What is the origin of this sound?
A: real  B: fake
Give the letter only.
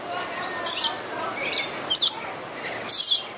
A